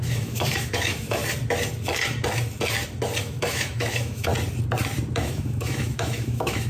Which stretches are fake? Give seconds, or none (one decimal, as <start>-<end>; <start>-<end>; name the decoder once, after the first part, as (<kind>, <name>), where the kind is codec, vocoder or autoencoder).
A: 0.0-1.2 (autoencoder, DAC-VAE); 3.2-4.3; 5.2-6.7